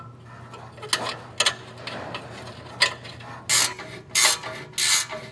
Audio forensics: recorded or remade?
recorded